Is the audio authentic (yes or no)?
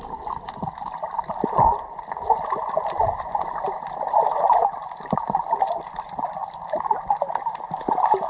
yes